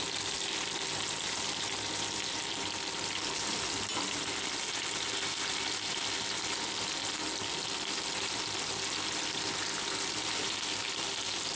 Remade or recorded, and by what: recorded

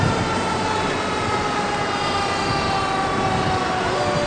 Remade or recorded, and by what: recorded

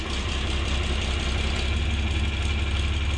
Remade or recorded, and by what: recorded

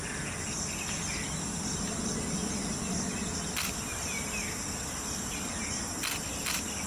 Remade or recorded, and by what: recorded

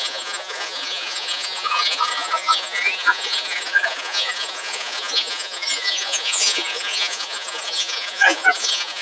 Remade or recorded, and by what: remade, vocoder, Vocos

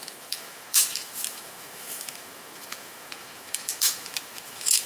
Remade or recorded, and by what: remade, autoencoder, DAC-VAE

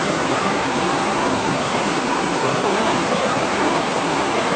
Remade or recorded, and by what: remade, codec, SNAC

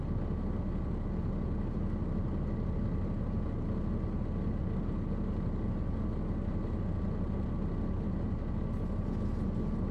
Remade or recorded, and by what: recorded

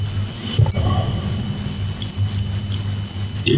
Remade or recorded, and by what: recorded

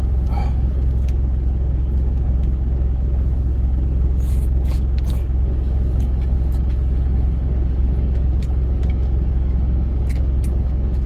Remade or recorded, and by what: remade, codec, DAC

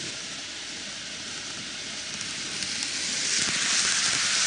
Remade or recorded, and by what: recorded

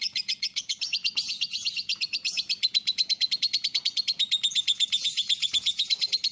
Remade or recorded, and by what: remade, vocoder, Vocos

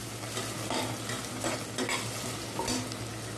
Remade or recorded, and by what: recorded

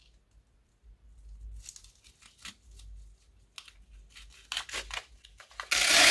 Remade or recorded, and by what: recorded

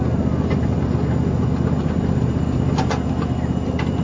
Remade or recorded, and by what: recorded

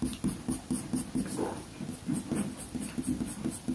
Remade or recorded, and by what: recorded